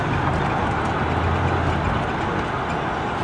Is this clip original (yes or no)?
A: yes